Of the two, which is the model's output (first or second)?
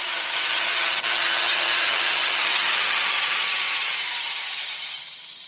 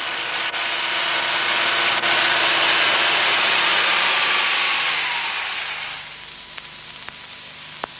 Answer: first